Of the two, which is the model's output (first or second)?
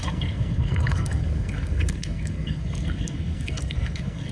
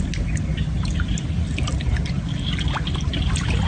first